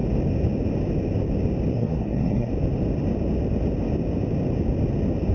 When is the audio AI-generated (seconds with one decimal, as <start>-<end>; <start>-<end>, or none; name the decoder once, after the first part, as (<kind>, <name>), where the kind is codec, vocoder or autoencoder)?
1.7-2.5 (codec, SNAC)